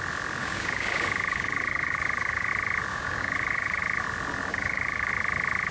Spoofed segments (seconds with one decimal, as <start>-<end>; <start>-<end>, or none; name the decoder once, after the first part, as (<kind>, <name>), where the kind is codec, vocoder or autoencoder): 0.4-2.5 (codec, DAC); 2.9-3.8; 4.5-5.1